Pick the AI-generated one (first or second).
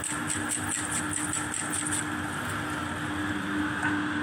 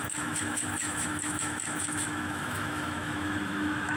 second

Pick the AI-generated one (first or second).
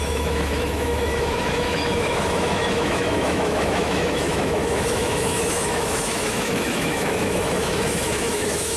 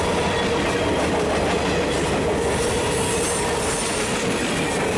first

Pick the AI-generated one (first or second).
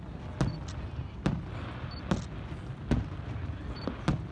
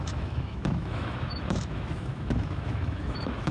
second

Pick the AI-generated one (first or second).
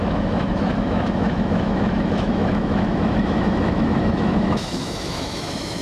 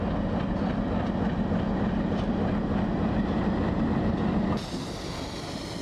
first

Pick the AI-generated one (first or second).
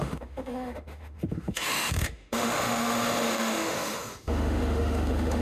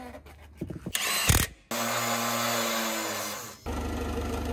first